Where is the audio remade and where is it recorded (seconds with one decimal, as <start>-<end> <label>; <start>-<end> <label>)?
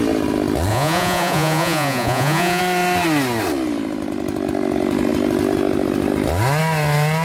0.0-0.7 recorded; 0.7-2.6 remade; 2.6-7.2 recorded